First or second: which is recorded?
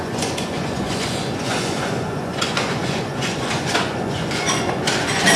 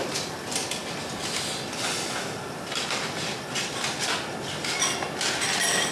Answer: second